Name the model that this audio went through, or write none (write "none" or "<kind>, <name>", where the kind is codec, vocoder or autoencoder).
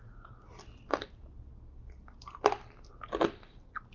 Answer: none